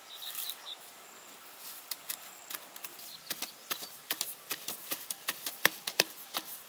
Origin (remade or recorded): recorded